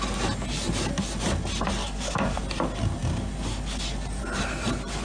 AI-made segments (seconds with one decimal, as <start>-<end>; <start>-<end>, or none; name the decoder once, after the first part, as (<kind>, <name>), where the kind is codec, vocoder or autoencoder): 1.8-2.4 (codec, DAC)